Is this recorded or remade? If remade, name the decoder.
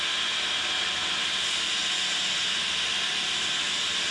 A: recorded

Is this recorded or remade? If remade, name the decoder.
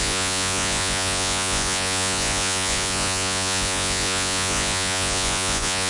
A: remade, vocoder, Vocos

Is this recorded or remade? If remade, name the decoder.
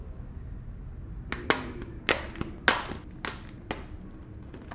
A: recorded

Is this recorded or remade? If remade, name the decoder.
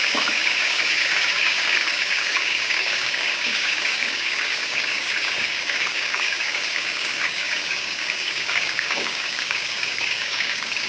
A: remade, codec, DAC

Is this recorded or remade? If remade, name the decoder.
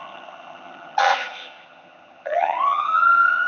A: remade, vocoder, HiFi-GAN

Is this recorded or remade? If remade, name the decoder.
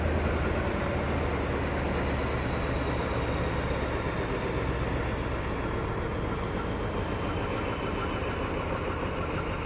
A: recorded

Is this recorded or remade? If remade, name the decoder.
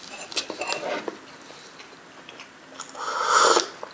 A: recorded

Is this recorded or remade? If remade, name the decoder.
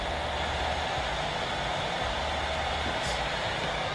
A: recorded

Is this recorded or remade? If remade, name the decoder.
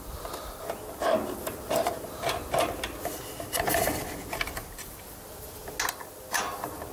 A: recorded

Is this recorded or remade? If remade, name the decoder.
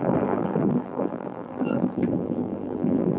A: remade, vocoder, BigVGAN v2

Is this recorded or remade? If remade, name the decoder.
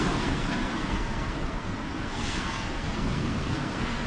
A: remade, codec, SNAC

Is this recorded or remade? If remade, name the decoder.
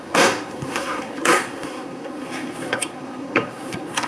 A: remade, codec, SNAC